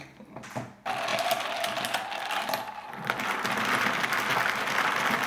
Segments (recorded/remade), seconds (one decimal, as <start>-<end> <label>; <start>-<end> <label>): 0.0-5.3 recorded